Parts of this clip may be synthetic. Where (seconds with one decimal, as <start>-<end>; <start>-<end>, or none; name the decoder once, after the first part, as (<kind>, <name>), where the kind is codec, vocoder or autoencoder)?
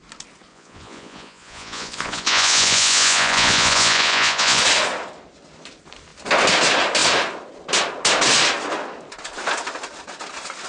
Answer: 0.5-4.6 (vocoder, Vocos)